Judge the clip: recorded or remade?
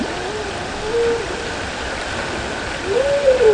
recorded